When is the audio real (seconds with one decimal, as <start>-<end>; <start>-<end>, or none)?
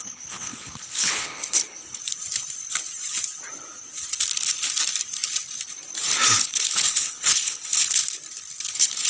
2.0-6.4; 8.0-8.7